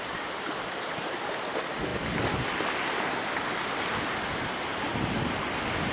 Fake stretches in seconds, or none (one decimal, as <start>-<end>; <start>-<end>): none